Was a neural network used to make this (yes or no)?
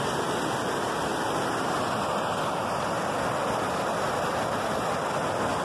no